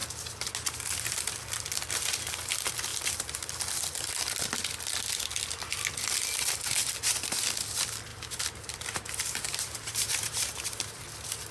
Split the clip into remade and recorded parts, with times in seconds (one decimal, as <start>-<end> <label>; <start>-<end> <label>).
0.0-8.1 recorded; 8.1-11.0 remade; 11.0-11.5 recorded